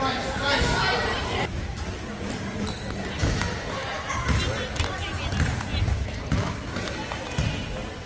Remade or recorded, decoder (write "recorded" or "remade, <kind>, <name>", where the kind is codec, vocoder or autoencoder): recorded